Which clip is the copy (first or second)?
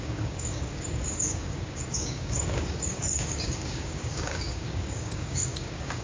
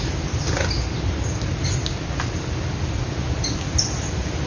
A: first